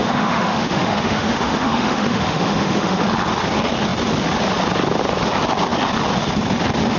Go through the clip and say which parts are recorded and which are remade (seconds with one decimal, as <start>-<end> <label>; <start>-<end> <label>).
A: 0.0-3.0 remade; 3.0-7.0 recorded